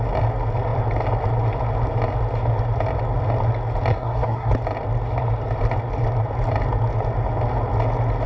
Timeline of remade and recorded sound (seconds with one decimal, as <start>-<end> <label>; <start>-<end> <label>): 0.0-3.9 recorded; 3.9-4.5 remade; 4.5-8.3 recorded